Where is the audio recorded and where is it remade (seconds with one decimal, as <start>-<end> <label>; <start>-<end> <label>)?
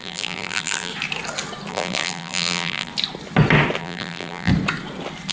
0.0-0.9 remade; 0.9-1.7 recorded; 1.7-2.9 remade; 2.9-3.8 recorded; 3.8-4.5 remade; 4.5-5.3 recorded